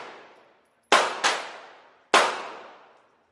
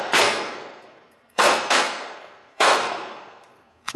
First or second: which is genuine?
first